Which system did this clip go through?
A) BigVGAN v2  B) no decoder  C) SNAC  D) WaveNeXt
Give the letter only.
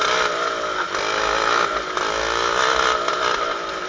B